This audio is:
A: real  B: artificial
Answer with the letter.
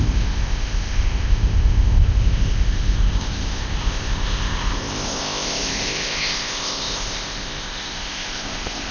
B